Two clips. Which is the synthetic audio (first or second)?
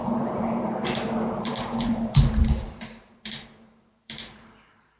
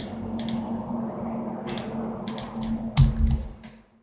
first